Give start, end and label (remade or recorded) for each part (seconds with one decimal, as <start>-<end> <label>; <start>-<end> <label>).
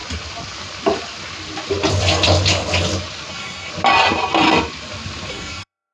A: 0.0-3.3 recorded; 3.3-3.7 remade; 3.7-5.3 recorded; 5.3-5.9 remade